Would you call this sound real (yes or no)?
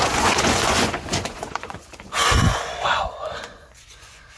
no